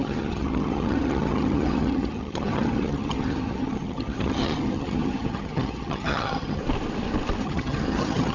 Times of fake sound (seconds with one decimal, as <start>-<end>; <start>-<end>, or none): 0.0-6.6; 7.4-8.3